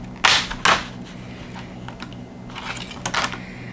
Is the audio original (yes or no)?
yes